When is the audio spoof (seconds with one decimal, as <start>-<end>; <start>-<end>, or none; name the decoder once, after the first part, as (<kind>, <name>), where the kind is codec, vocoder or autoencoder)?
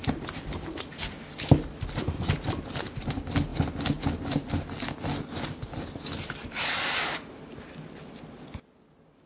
none